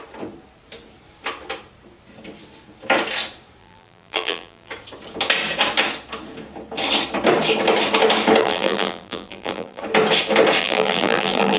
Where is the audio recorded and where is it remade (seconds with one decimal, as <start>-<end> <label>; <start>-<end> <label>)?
0.0-3.6 recorded; 3.6-4.7 remade; 4.7-8.4 recorded; 8.4-9.8 remade; 9.8-10.6 recorded; 10.6-11.6 remade